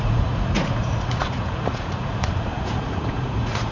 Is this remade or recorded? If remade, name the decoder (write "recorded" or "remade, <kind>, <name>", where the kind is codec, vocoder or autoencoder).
remade, vocoder, Vocos